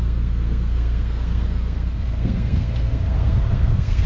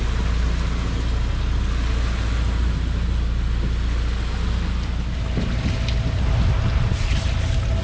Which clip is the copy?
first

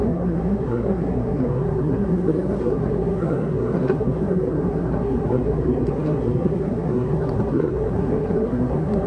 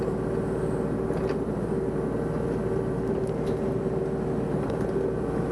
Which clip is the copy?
first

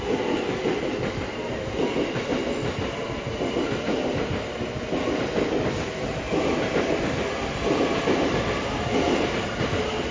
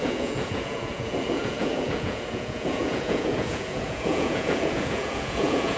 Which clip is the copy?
second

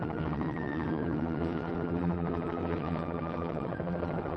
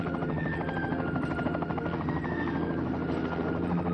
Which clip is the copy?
first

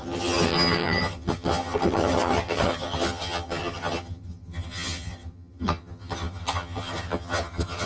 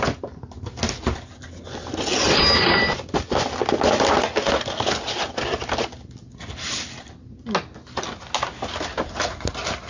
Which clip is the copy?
first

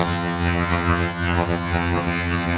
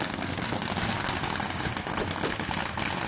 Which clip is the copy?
first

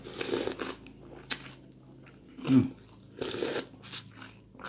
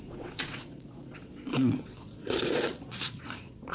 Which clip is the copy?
second